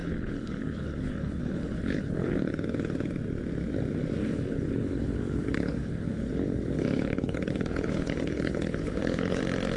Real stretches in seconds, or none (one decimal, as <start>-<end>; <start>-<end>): 2.5-4.2; 9.4-9.8

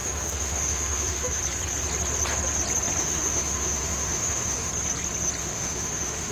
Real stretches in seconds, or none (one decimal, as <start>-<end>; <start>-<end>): 1.4-3.0; 4.7-5.4

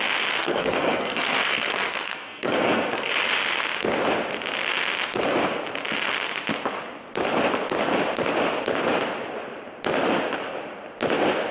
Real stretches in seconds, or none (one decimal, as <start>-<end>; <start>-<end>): 0.0-0.4; 3.1-11.5

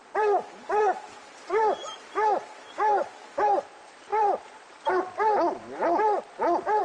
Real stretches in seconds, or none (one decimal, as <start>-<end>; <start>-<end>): 0.0-1.5